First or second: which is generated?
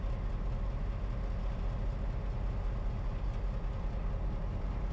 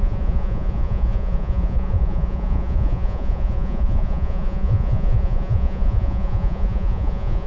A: second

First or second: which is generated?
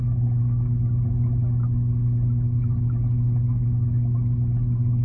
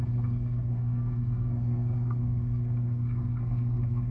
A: second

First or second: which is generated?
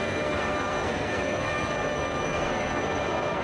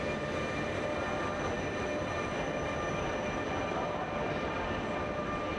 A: first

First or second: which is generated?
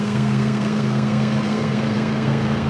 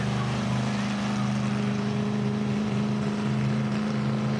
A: first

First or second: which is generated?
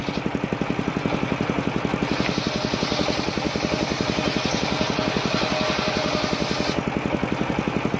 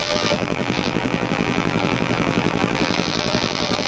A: second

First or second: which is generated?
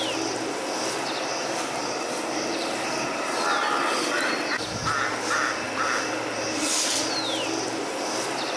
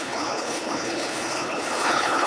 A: second